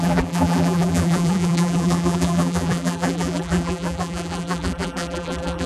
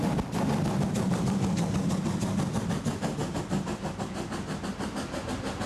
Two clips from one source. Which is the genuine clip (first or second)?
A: second